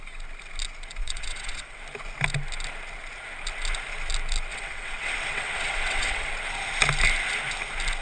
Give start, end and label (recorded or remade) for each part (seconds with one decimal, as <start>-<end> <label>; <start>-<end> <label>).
0.0-1.0 recorded; 1.0-1.8 remade; 1.8-4.5 recorded; 4.5-6.3 remade; 6.3-8.0 recorded